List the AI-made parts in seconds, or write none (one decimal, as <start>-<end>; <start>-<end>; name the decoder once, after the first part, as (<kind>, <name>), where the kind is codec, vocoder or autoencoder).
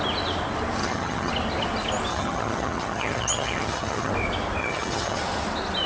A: 0.8-1.3 (vocoder, HiFi-GAN); 2.1-4.1; 4.6-5.2